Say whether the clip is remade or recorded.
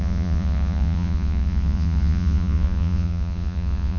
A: remade